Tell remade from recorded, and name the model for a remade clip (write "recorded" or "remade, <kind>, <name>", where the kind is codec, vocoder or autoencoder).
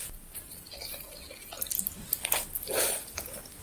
recorded